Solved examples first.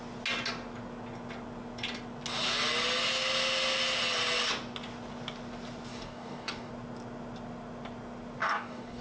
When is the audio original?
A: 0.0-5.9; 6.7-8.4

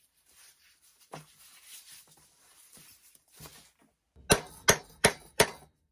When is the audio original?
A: 3.5-5.0

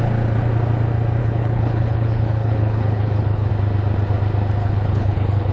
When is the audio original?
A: 0.0-1.2; 3.5-4.6

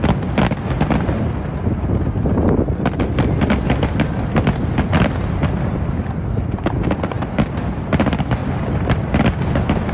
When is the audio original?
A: 0.0-9.9

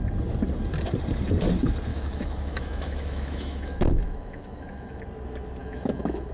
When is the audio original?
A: 0.0-1.9; 5.0-5.6

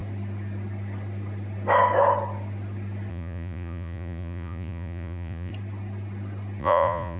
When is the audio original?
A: 0.0-3.1; 5.5-6.6

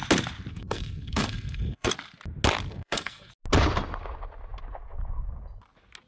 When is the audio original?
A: 0.0-0.5; 1.9-2.7; 3.3-6.1